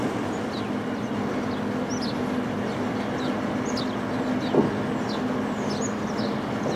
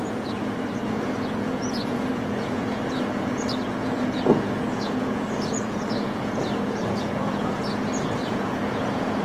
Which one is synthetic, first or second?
second